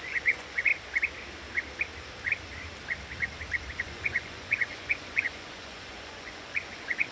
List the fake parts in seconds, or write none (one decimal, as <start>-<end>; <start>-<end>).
0.0-0.7; 3.8-7.1